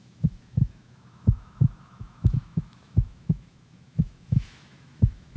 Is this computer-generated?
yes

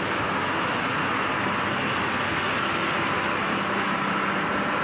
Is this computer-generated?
no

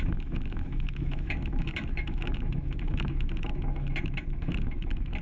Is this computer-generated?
yes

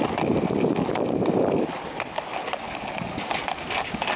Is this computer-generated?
no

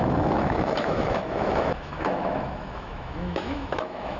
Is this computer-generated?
yes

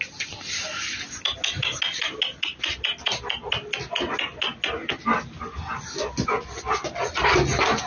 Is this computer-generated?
no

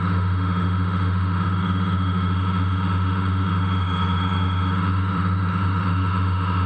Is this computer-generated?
yes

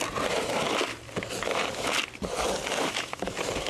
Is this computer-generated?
no